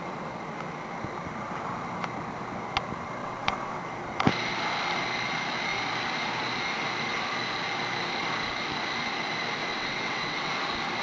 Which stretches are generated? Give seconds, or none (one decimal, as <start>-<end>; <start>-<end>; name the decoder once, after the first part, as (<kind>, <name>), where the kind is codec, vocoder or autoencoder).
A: 3.2-3.8 (vocoder, WaveNeXt); 9.7-10.5